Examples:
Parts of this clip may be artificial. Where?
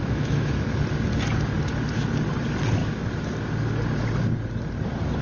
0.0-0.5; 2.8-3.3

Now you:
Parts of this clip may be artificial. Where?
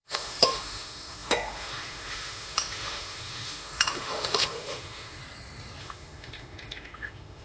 0.0-5.2; 5.8-7.4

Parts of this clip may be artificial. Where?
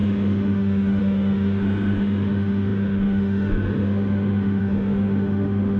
0.0-5.8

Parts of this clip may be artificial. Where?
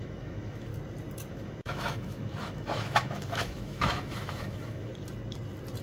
0.0-0.7; 1.3-4.9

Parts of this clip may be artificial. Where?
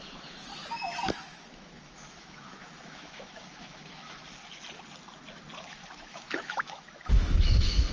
0.0-0.5; 1.1-4.2; 5.7-7.9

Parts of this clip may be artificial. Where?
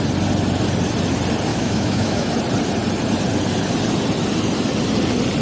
1.5-2.3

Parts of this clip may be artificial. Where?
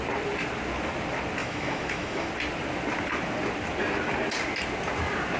1.4-2.3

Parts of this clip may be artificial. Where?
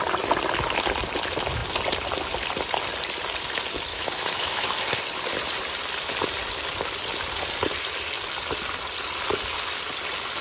3.9-4.7